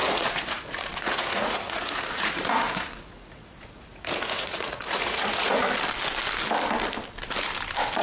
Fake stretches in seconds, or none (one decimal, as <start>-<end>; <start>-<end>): 0.0-5.6